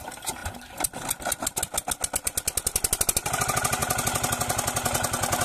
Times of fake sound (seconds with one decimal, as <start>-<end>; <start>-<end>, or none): none